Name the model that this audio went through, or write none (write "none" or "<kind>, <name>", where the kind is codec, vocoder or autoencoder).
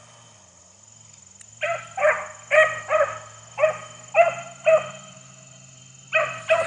vocoder, BigVGAN v2